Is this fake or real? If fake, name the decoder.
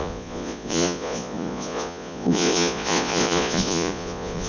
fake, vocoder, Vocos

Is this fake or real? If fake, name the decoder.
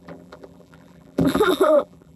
fake, vocoder, BigVGAN v2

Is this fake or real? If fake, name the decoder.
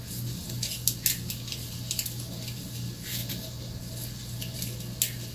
real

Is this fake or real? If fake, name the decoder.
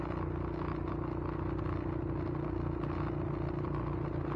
real